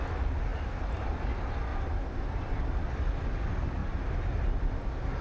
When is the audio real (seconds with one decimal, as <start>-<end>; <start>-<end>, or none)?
0.0-0.5; 1.2-1.7; 2.4-3.8; 4.6-5.2